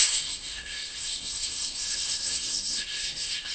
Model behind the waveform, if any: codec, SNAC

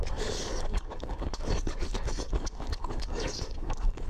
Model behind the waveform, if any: codec, DAC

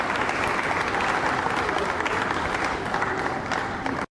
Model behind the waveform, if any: none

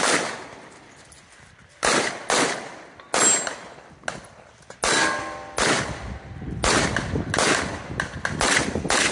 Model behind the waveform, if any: none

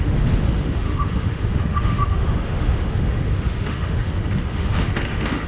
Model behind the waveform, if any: autoencoder, DAC-VAE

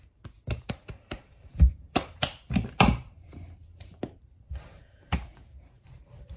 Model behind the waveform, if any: vocoder, BigVGAN v2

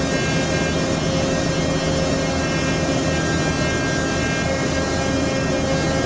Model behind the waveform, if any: none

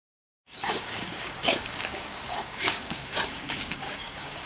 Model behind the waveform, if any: codec, DAC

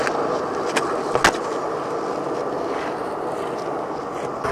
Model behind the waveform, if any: none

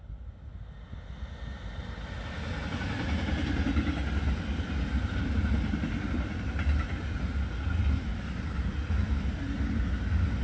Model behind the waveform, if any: none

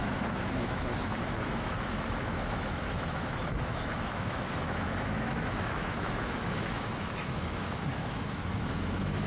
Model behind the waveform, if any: autoencoder, DAC-VAE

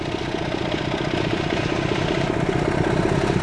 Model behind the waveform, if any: none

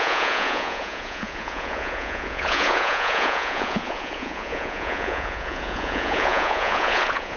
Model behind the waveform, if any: vocoder, Vocos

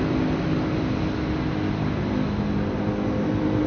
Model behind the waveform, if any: none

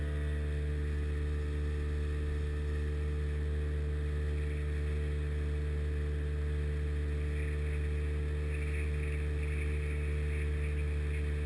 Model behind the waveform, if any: none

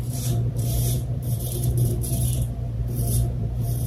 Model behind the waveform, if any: vocoder, BigVGAN v2